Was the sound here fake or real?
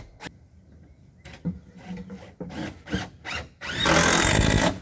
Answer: real